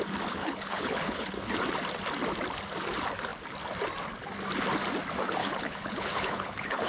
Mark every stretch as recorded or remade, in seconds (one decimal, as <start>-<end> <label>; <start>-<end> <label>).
0.0-0.4 recorded; 0.4-1.3 remade; 1.3-5.4 recorded; 5.4-6.9 remade